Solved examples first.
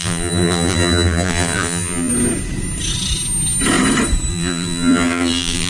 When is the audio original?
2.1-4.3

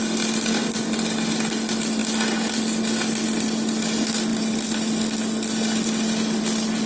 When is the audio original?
0.0-6.9

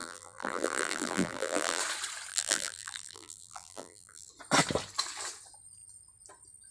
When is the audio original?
1.8-2.3; 4.3-6.7